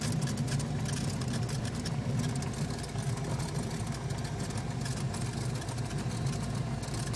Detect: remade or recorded recorded